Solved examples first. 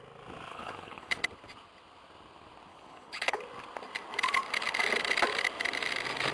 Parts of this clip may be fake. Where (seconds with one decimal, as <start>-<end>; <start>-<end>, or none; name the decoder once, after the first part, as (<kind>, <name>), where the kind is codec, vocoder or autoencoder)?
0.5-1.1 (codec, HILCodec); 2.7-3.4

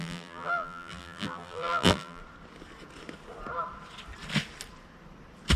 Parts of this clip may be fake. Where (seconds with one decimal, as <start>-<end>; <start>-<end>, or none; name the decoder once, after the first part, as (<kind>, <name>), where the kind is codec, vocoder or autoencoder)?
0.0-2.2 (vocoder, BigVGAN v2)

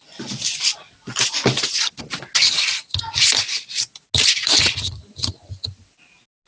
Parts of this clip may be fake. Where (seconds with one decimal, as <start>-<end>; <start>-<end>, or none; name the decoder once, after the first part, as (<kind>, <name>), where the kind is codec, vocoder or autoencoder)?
0.7-2.0 (vocoder, BigVGAN v2); 4.4-5.3

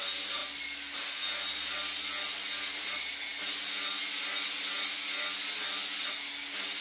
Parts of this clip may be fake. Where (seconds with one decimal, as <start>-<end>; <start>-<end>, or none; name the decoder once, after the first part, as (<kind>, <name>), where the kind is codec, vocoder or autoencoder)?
none

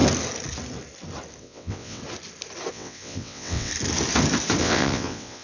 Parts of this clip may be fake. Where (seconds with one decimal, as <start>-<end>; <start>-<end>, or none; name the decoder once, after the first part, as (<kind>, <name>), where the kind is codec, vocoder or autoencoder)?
1.4-2.0 (vocoder, WaveNeXt); 2.7-3.7; 4.6-5.4

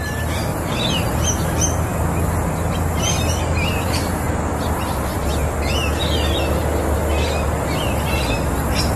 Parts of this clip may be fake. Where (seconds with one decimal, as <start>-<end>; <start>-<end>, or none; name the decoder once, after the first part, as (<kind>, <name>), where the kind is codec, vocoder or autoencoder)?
0.5-1.0 (vocoder, BigVGAN v2)

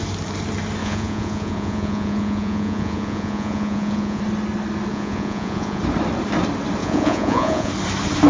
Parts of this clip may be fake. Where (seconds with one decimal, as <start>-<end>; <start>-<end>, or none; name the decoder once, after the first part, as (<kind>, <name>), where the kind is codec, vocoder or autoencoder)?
0.8-4.2 (vocoder, Vocos); 4.9-5.8; 6.8-7.7